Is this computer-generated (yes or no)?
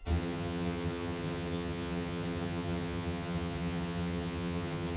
yes